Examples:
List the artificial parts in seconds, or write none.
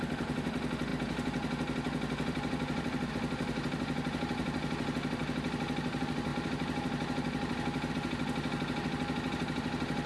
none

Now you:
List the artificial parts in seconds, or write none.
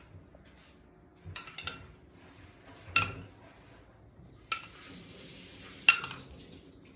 none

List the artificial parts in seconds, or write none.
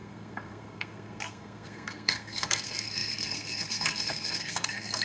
0.0-5.0 (codec, SNAC)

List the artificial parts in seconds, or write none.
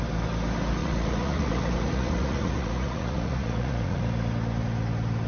0.8-4.0 (vocoder, Vocos)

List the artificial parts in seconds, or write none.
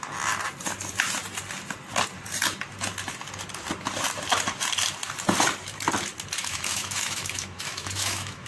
6.4-8.5 (autoencoder, DAC-VAE)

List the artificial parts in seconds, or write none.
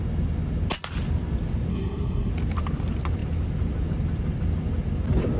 1.7-2.3 (codec, SNAC)